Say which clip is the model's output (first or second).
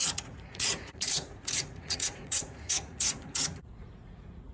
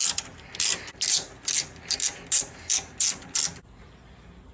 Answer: first